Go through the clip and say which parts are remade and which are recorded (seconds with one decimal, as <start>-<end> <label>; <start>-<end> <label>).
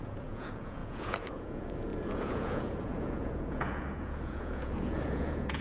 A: 0.0-5.6 remade